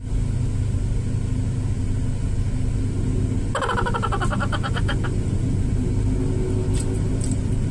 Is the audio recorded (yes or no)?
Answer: yes